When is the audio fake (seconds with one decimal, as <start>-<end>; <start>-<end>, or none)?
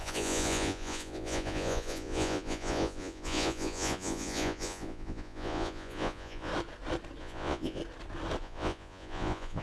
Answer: 0.0-6.5; 7.2-7.8; 8.4-9.6